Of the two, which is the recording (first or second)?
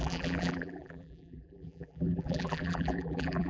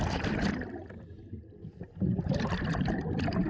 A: second